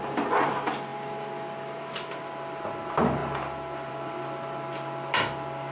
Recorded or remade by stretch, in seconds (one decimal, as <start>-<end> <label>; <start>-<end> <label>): 0.0-5.7 recorded